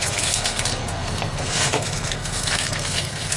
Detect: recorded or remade remade